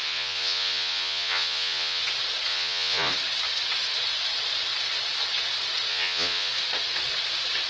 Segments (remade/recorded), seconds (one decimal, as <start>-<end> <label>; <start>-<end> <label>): 0.0-2.0 remade; 2.0-2.5 recorded; 2.5-3.1 remade; 3.1-5.9 recorded; 5.9-6.5 remade; 6.5-7.7 recorded